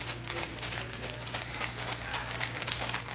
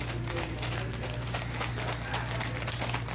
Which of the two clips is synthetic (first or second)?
first